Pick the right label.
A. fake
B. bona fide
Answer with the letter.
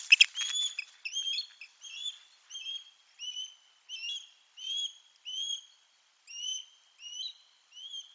B